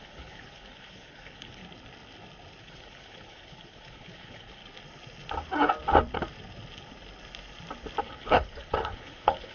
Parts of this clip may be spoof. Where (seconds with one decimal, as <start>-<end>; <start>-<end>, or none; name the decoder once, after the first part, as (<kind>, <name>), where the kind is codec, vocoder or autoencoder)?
0.0-1.6 (codec, HILCodec); 2.6-4.6; 8.0-9.5